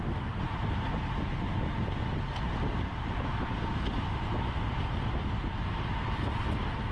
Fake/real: real